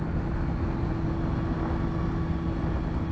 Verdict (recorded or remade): recorded